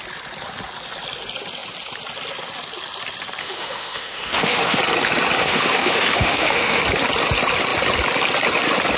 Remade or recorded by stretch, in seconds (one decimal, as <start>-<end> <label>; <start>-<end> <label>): 0.0-3.4 recorded; 3.4-4.8 remade; 4.8-5.4 recorded; 5.4-6.8 remade; 6.8-9.0 recorded